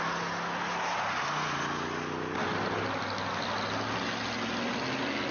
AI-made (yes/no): no